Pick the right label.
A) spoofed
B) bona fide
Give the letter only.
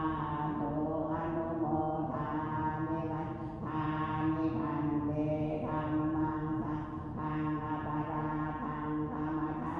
B